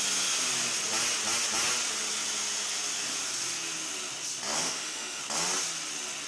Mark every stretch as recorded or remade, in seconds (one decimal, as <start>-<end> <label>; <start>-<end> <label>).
0.0-4.6 recorded; 4.6-5.2 remade; 5.2-6.3 recorded